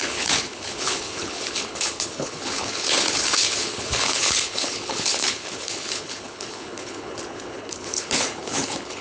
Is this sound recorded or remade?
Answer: remade